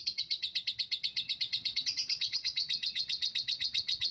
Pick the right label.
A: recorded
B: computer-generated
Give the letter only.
B